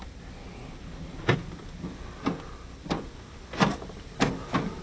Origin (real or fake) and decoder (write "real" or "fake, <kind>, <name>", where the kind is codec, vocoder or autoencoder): real